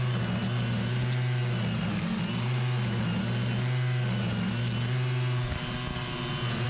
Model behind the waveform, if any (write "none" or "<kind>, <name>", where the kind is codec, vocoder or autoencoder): none